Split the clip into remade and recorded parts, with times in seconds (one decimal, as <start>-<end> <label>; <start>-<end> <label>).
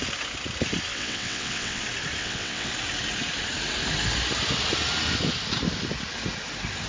0.0-0.9 recorded; 0.9-1.8 remade; 1.8-2.2 recorded; 2.2-2.7 remade; 2.7-6.9 recorded